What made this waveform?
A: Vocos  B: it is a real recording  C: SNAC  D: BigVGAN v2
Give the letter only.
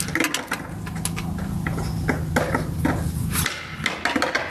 B